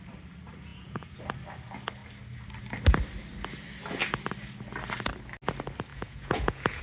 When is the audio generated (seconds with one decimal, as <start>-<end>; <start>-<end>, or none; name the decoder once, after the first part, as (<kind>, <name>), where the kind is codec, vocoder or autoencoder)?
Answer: 0.7-1.2 (vocoder, Vocos); 5.9-6.8